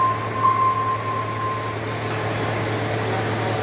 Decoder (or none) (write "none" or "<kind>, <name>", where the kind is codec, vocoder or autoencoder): none